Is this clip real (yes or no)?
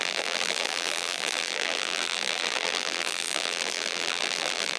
no